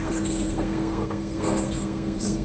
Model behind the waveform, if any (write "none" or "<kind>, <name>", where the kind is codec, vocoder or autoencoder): codec, SNAC